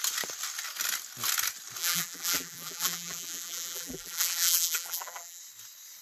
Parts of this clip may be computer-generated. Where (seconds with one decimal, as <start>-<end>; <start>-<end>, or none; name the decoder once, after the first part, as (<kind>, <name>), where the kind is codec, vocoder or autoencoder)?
1.8-5.4 (vocoder, BigVGAN v2)